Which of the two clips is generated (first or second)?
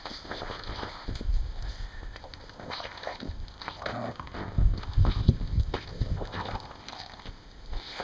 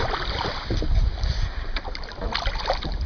first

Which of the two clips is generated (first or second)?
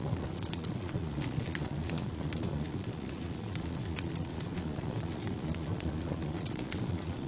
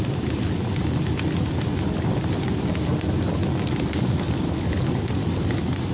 first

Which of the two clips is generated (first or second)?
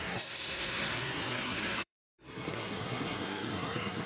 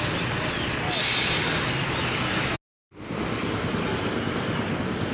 first